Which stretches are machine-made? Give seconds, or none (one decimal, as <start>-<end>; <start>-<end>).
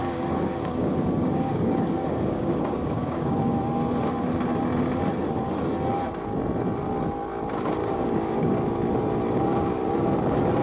0.0-3.7; 7.8-8.5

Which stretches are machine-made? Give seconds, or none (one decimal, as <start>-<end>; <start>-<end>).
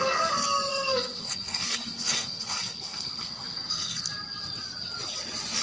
0.7-4.1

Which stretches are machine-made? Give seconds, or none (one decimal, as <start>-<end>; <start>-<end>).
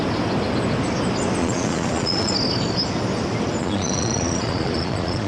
1.4-2.3; 3.6-5.3